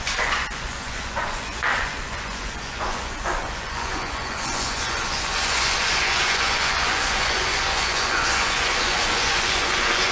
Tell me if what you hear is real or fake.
fake